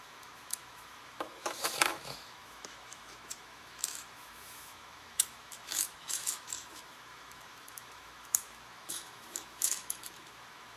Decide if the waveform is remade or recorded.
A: remade